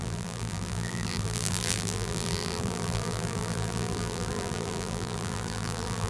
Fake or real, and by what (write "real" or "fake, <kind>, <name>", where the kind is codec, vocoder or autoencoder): fake, vocoder, BigVGAN v2